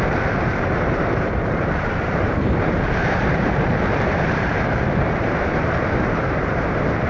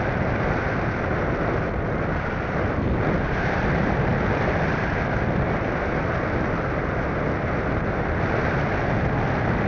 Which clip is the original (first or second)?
second